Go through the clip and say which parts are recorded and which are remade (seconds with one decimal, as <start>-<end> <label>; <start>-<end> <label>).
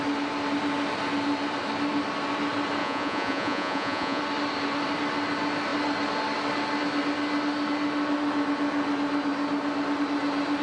0.0-2.8 recorded; 2.8-4.2 remade; 4.2-10.6 recorded